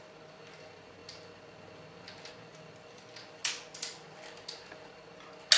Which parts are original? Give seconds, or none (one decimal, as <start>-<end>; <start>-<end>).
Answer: 0.0-5.6

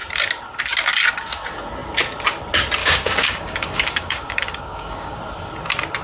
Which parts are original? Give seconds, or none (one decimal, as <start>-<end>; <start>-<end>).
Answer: 0.0-2.8; 5.2-6.0